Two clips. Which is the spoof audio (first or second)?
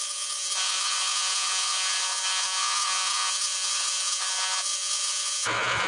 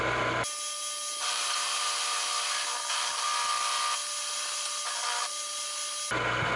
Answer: first